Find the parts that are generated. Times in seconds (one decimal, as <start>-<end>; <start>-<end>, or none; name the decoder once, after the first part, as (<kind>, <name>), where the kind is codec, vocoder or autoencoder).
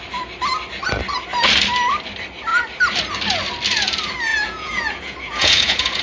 4.3-6.0 (vocoder, Vocos)